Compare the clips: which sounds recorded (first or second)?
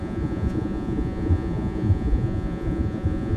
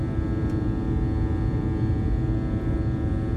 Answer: second